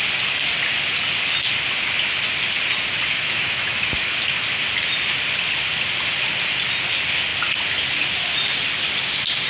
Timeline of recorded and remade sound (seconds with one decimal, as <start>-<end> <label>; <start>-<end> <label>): 0.0-3.1 recorded; 3.1-4.4 remade; 4.4-9.5 recorded

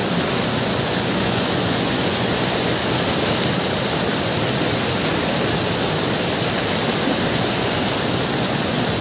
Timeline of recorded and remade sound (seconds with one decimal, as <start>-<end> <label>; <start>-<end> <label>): 0.0-0.6 recorded; 0.6-2.8 remade; 2.8-7.3 recorded; 7.3-7.8 remade; 7.8-8.4 recorded; 8.4-9.0 remade

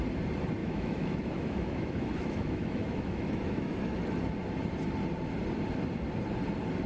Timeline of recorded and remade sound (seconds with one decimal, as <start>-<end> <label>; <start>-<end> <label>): 0.0-0.6 recorded; 0.6-4.2 remade; 4.2-6.9 recorded

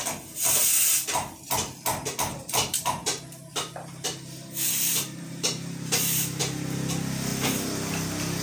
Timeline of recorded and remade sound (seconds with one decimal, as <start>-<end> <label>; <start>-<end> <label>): 0.0-2.3 recorded; 2.3-6.4 remade; 6.4-8.4 recorded

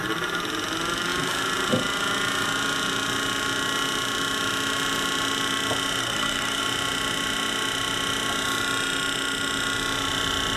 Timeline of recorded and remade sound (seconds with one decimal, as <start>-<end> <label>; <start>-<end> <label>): 0.0-6.0 recorded; 6.0-6.6 remade; 6.6-10.6 recorded

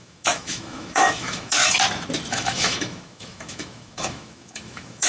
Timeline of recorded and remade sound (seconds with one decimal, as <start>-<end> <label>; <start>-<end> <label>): 0.0-1.6 remade; 1.6-2.3 recorded; 2.3-5.1 remade

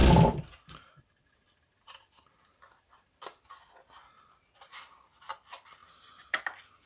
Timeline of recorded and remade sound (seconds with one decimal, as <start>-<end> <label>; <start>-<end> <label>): 0.0-6.9 remade

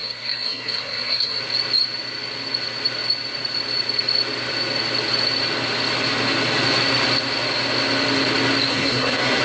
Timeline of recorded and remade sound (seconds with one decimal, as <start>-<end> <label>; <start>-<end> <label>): 0.0-1.4 remade; 1.4-8.7 recorded; 8.7-9.4 remade